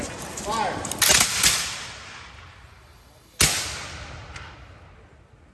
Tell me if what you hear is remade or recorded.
recorded